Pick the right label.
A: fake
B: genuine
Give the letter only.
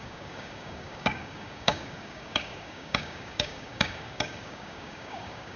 A